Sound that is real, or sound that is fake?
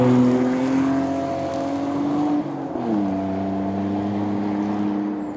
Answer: real